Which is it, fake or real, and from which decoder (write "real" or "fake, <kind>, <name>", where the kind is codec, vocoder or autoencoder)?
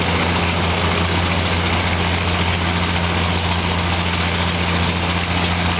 real